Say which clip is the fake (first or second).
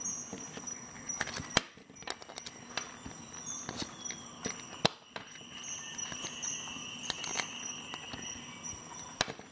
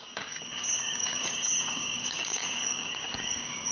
second